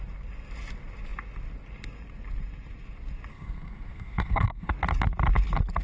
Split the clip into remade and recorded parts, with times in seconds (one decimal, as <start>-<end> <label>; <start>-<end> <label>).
0.0-3.3 recorded; 3.3-4.7 remade; 4.7-5.8 recorded